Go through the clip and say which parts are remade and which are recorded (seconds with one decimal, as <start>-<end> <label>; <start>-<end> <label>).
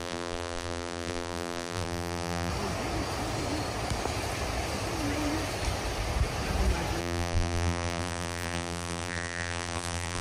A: 0.0-2.5 remade; 2.5-7.0 recorded; 7.0-10.2 remade